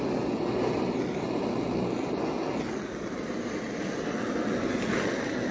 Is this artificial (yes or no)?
no